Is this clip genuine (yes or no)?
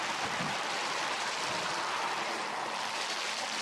yes